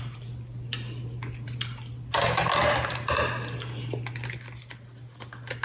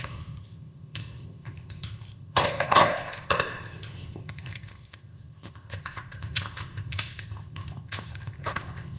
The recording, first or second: first